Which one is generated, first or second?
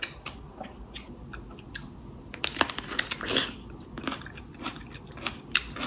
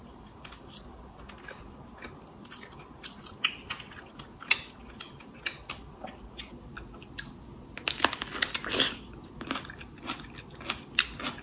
first